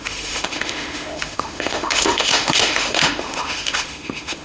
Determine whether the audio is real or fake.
fake